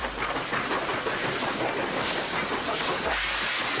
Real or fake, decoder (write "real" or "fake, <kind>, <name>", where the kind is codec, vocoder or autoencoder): real